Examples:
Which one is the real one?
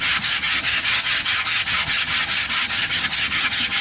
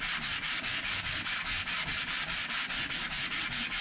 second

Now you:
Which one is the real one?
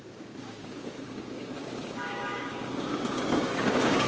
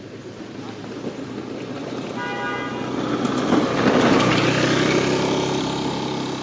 second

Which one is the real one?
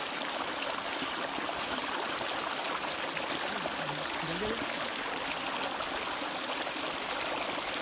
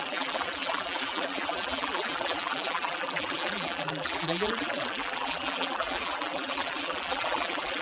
first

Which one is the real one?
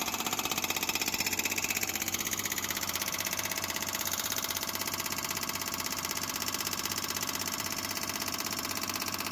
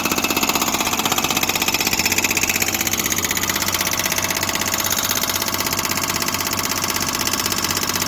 second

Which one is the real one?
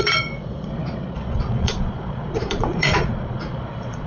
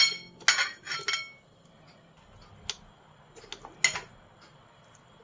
second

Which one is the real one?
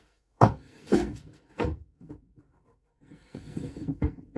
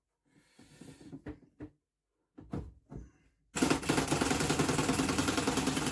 second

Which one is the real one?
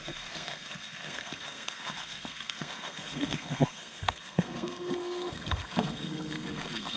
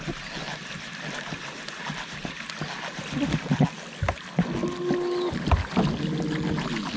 second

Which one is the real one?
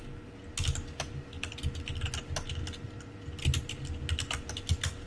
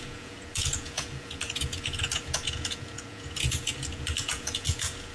first